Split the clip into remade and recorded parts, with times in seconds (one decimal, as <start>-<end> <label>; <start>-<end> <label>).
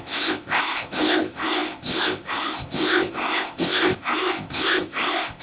0.0-5.4 remade